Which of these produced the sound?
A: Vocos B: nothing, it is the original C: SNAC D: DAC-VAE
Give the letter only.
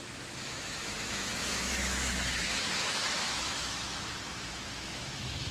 D